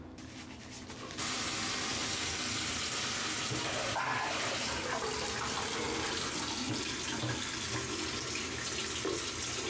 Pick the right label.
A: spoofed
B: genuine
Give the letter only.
B